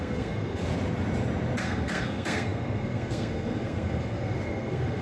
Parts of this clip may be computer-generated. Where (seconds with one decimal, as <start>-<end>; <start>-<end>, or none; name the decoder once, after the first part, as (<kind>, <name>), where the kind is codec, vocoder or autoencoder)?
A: 0.0-0.7 (codec, SNAC); 1.6-5.0